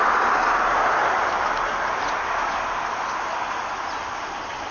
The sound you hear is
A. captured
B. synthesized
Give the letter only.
A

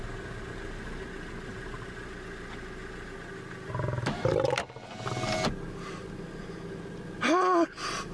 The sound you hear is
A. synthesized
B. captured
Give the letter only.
B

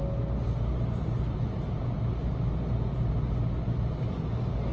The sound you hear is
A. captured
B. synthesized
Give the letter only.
A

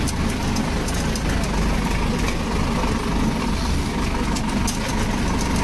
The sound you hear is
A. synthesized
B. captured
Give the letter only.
B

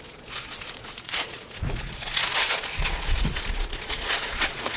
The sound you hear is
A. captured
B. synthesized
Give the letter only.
B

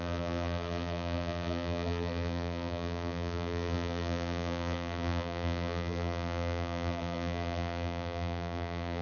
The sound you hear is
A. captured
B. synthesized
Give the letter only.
B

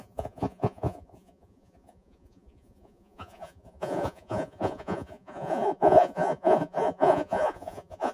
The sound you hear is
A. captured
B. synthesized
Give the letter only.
B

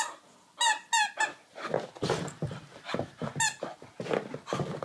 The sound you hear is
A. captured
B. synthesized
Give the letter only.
A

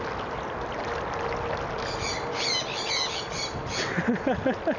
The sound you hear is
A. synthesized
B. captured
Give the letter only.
B